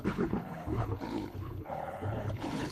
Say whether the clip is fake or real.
fake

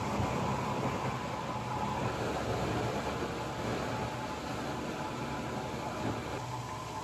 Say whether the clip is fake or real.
real